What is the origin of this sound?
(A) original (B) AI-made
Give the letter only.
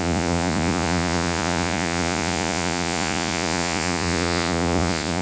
B